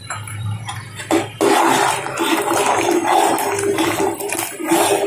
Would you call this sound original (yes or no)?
no